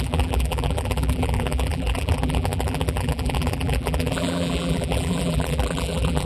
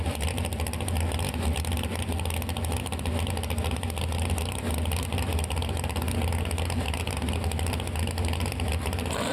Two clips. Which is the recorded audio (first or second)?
second